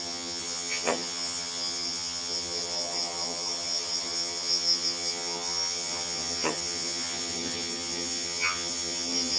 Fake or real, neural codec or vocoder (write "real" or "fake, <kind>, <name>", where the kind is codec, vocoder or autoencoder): fake, vocoder, HiFi-GAN